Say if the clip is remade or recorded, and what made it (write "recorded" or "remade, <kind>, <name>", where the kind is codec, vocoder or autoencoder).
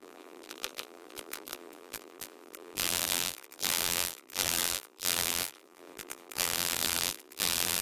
remade, vocoder, BigVGAN v2